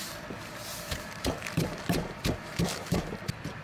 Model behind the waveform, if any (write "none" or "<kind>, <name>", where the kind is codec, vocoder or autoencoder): vocoder, BigVGAN v2